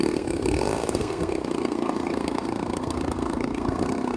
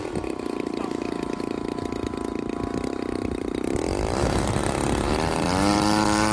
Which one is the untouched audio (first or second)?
second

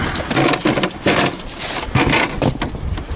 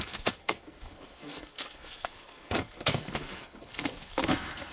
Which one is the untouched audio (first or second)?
first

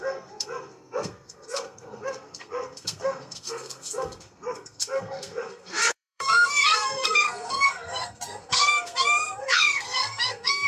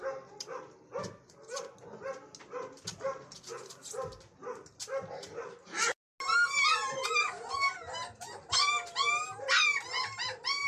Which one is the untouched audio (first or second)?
second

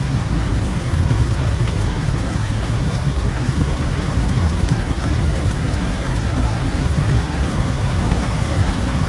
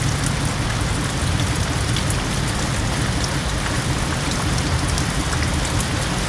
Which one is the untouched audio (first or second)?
second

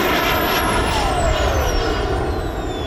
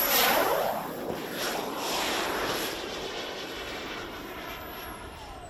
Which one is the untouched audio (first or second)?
first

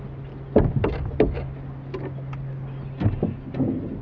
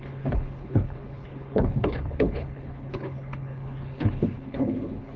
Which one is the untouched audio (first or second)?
first